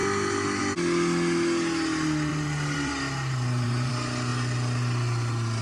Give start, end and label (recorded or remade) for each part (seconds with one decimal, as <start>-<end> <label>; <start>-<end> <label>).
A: 0.0-2.3 recorded; 2.3-3.9 remade; 3.9-5.6 recorded